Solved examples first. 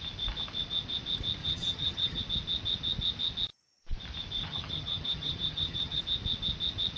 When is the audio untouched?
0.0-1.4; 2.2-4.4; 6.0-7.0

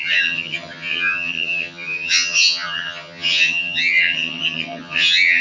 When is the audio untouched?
none